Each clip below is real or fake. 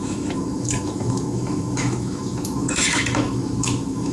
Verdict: fake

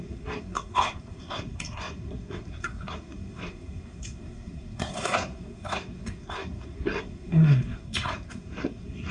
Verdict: fake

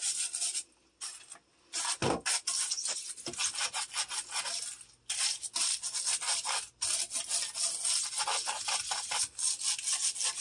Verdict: real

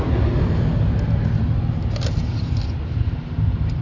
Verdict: real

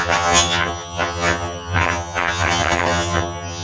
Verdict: fake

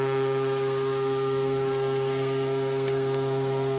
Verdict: fake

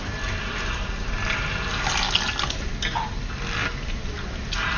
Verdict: real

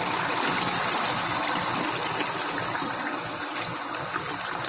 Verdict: real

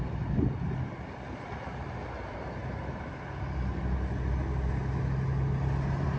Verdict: real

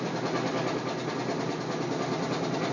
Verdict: real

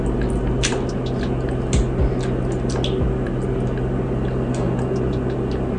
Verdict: real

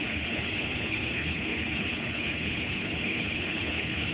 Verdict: fake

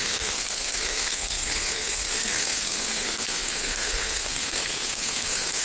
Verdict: fake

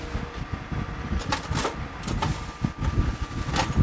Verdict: real